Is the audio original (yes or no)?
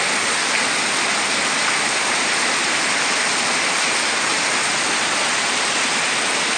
yes